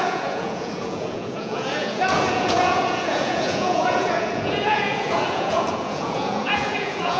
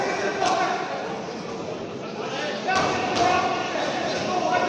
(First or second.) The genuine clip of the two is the second